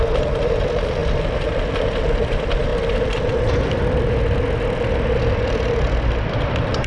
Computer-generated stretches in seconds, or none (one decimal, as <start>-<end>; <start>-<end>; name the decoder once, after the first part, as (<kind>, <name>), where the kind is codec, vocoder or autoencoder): 0.0-1.0 (vocoder, BigVGAN v2); 1.7-2.7; 5.2-6.9